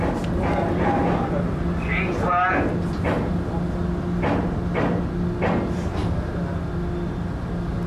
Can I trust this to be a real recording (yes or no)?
yes